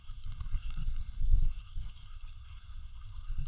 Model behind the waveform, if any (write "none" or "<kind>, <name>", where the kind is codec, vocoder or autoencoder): codec, SNAC